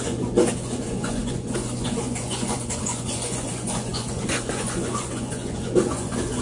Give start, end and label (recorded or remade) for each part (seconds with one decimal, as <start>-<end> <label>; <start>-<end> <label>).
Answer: 0.0-6.4 remade